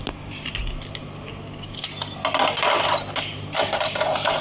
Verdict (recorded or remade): recorded